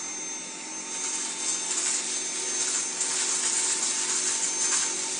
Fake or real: real